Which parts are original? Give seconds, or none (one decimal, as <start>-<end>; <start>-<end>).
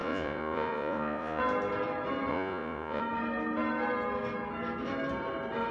1.4-2.3; 3.0-5.7